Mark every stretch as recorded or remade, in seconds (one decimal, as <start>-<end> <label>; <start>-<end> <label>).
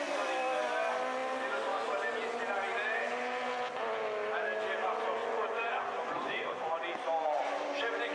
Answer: 0.0-5.2 recorded; 5.2-6.6 remade; 6.6-8.1 recorded